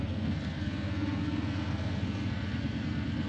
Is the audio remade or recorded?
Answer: remade